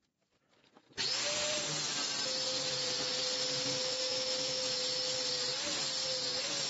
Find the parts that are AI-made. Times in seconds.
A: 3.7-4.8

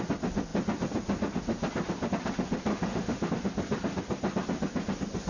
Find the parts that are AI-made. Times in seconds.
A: 2.7-3.3

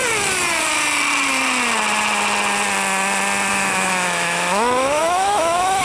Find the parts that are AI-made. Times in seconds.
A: 3.5-5.8

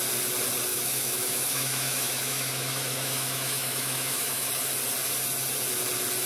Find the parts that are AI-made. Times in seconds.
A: 0.7-4.5

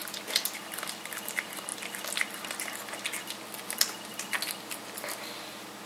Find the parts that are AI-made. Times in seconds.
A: none